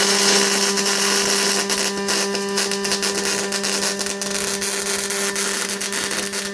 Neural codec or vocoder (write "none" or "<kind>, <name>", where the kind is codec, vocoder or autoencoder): none